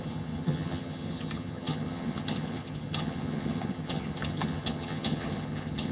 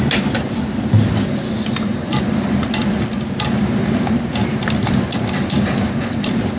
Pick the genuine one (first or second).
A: second